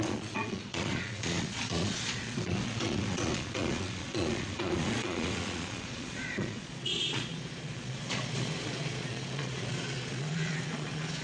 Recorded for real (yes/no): no